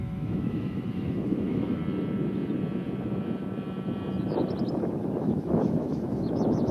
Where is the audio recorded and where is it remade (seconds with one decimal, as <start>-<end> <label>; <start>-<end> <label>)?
0.0-1.8 remade; 1.8-4.7 recorded; 4.7-6.7 remade